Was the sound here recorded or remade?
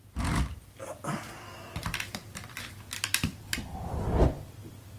recorded